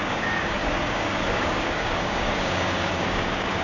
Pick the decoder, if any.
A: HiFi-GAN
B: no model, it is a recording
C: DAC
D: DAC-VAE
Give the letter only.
C